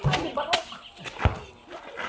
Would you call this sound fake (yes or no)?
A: no